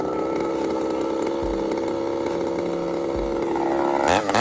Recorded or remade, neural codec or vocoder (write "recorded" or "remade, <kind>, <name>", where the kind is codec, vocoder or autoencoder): recorded